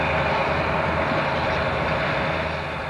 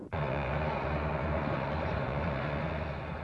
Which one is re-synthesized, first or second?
second